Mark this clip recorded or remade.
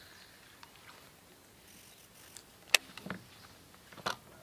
recorded